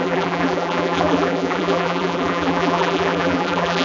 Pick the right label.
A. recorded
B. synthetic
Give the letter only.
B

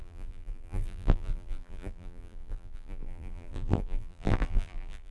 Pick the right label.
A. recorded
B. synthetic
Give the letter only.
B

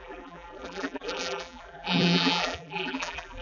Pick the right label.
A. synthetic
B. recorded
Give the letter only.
A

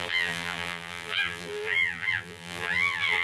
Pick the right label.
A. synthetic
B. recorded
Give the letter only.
A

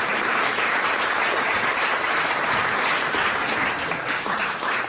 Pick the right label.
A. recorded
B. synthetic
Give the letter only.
B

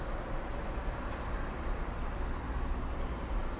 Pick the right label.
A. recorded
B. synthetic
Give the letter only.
B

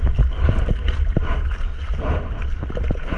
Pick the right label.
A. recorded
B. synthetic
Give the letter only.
A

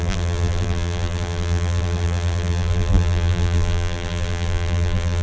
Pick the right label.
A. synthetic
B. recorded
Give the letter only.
A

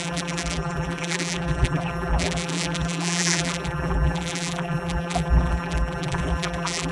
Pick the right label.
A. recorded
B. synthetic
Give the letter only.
B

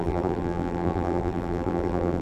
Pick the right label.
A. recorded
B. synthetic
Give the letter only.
B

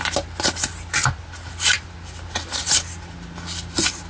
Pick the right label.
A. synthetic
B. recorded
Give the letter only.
B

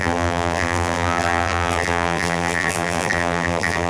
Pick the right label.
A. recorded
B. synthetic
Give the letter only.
B